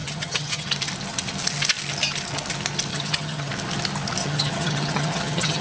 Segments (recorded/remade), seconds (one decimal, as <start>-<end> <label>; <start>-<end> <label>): 0.0-0.7 remade; 0.7-2.9 recorded; 2.9-3.5 remade; 3.5-4.2 recorded; 4.2-5.6 remade